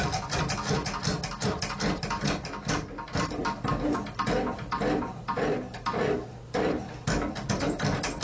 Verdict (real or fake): real